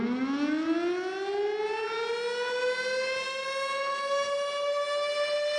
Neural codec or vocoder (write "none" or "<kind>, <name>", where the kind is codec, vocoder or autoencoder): none